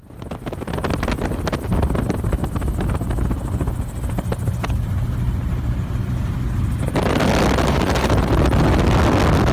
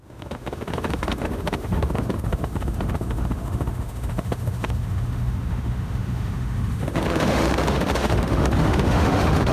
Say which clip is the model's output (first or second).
second